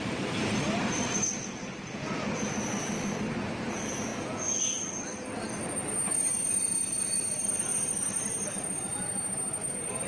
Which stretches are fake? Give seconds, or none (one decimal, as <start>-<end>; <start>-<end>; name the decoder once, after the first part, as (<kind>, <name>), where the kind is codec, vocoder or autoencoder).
0.0-4.1 (vocoder, BigVGAN v2); 6.1-10.1